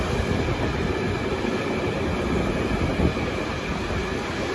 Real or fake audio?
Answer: real